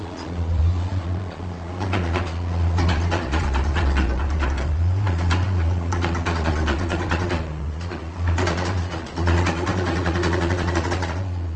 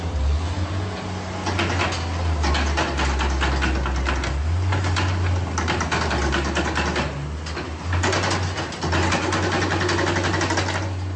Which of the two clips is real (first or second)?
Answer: second